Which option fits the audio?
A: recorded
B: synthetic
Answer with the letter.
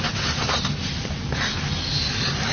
A